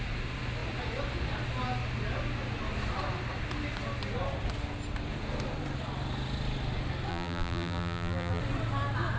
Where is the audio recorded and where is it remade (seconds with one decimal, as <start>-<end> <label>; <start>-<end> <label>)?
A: 0.0-7.1 recorded; 7.1-8.4 remade; 8.4-9.2 recorded